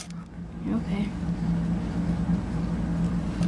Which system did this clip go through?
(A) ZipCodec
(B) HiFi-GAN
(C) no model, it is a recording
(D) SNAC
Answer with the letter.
C